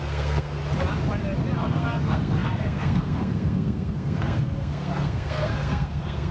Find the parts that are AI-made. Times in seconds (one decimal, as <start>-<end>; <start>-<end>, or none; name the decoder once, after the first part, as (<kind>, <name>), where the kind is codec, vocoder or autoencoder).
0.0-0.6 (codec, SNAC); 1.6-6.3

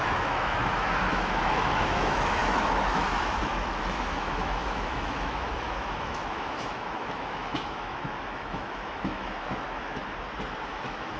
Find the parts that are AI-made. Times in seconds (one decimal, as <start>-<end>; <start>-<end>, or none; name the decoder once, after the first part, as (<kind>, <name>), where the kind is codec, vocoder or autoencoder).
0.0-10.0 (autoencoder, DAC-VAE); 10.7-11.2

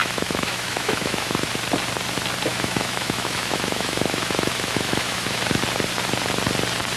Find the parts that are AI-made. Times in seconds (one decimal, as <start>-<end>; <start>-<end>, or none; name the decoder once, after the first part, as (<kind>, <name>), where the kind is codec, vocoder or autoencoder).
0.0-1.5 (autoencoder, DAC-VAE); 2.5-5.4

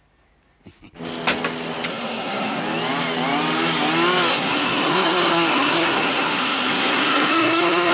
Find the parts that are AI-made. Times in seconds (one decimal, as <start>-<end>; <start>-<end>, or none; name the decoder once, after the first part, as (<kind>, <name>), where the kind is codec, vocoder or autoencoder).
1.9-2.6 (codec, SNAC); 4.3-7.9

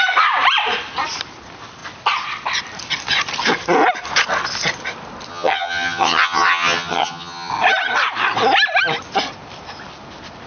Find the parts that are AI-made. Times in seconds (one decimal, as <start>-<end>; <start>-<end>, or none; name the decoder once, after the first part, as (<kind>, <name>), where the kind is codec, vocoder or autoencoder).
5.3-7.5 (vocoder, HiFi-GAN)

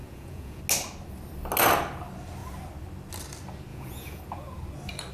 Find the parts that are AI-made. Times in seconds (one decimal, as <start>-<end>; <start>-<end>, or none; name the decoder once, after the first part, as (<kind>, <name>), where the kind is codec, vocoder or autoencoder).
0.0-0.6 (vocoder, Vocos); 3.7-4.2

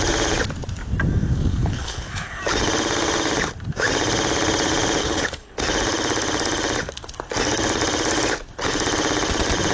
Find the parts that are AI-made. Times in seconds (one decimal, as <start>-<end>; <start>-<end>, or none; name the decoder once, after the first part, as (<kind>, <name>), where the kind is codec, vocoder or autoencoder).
1.5-2.4 (codec, HILCodec); 5.0-5.6

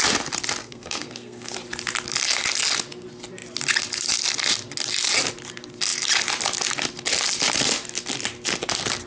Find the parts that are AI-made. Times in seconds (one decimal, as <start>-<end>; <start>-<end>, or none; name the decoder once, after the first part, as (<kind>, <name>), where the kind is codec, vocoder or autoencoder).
0.6-1.5 (codec, SNAC)